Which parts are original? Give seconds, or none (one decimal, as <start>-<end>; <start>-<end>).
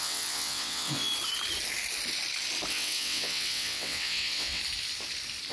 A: 1.1-2.7; 4.6-5.5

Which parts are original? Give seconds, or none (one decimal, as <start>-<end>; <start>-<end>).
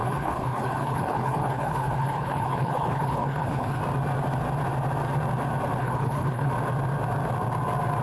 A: 3.8-5.8; 6.5-8.0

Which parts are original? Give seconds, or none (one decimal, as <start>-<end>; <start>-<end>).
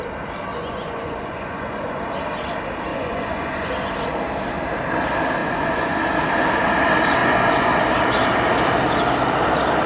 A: 0.0-0.5; 2.1-2.9; 3.7-5.4; 6.0-7.2; 7.8-9.9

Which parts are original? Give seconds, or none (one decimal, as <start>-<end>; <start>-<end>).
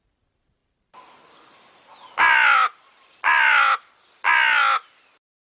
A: 0.0-0.6; 4.0-5.6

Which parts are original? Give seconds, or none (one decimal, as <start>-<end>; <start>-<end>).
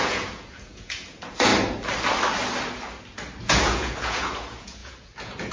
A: 1.5-3.4